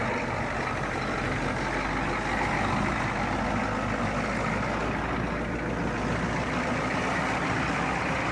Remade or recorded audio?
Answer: recorded